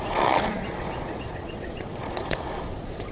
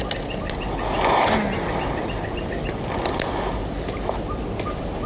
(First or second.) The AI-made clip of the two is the first